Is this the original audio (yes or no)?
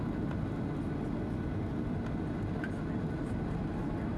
yes